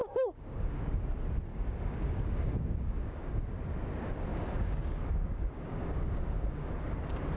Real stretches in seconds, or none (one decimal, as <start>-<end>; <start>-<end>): 1.0-1.5; 3.4-4.3; 6.7-7.4